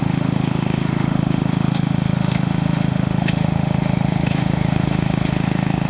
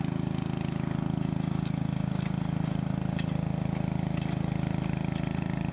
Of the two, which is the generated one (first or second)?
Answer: first